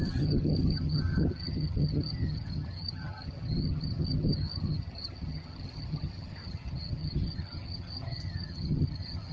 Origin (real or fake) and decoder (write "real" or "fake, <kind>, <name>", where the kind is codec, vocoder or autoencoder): fake, vocoder, HiFi-GAN